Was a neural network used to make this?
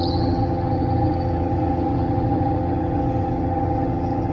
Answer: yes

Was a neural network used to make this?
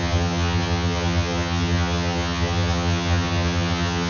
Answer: yes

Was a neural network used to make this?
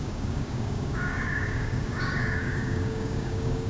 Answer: yes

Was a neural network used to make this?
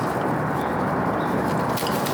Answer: yes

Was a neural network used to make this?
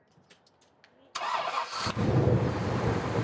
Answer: no